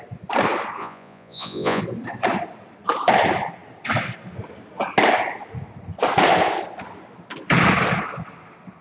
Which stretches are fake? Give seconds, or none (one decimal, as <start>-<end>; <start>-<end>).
0.8-1.8